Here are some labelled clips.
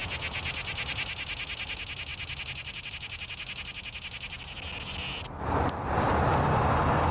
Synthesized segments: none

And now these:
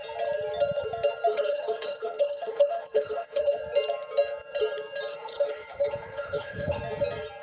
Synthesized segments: 1.3-3.6 (codec, HILCodec); 5.1-6.8

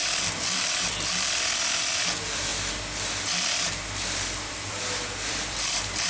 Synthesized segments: 0.0-2.5 (vocoder, BigVGAN v2); 4.5-6.1

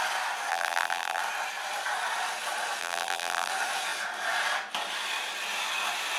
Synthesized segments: 0.5-1.2 (vocoder, BigVGAN v2); 2.8-3.5

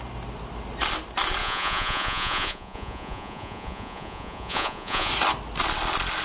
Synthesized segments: 1.4-5.1 (vocoder, Vocos)

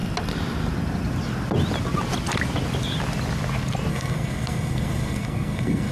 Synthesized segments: 3.9-5.9 (codec, SNAC)

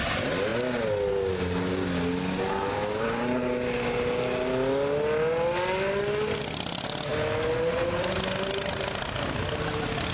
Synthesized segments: none

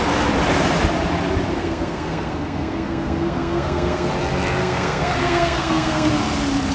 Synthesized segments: 1.5-4.1 (codec, SNAC); 4.6-6.1